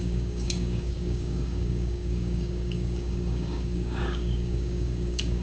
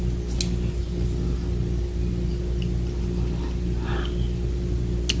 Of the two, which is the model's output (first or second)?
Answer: first